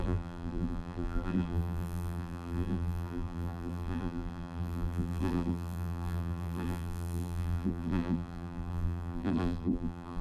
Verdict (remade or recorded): remade